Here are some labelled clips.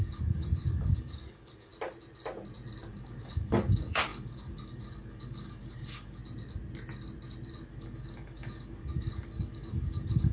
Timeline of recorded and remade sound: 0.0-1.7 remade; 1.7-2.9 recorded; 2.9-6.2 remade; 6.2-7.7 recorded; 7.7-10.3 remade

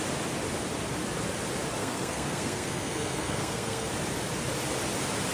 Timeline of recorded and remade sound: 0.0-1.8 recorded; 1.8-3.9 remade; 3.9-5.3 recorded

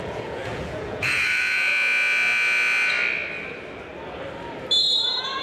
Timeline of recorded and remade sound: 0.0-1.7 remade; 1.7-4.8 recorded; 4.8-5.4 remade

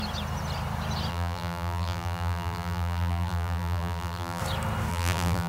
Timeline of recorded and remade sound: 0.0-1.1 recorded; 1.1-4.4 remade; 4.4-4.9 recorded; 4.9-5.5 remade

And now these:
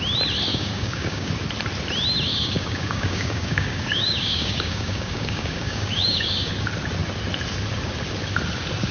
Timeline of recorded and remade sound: 0.0-0.5 recorded; 0.5-1.3 remade; 1.3-2.3 recorded; 2.3-6.5 remade; 6.5-8.9 recorded

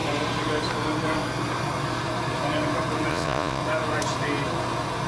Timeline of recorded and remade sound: 0.0-3.1 recorded; 3.1-3.6 remade; 3.6-5.1 recorded

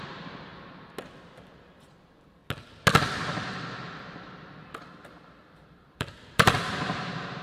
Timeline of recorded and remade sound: 0.0-0.5 remade; 0.5-1.4 recorded; 1.4-2.4 remade; 2.4-5.3 recorded; 5.3-7.4 remade

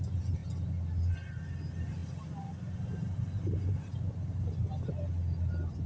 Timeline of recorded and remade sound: 0.0-5.9 recorded